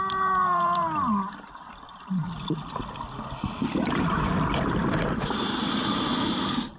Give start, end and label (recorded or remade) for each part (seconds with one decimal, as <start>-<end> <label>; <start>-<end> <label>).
0.0-6.8 recorded